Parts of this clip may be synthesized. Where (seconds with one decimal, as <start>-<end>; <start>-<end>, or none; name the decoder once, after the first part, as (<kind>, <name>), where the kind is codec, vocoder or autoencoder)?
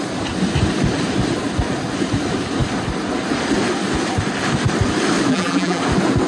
5.3-5.8 (vocoder, BigVGAN v2)